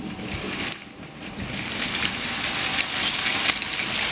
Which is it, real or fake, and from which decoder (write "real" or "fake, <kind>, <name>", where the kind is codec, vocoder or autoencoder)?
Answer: fake, vocoder, BigVGAN v2